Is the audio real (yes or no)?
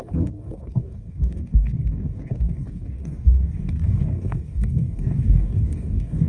no